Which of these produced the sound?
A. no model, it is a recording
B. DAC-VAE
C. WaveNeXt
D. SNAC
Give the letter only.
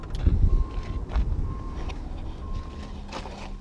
A